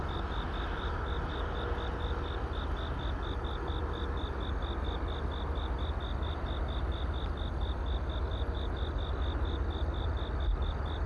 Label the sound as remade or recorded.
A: recorded